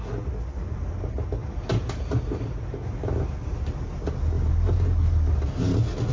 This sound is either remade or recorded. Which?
recorded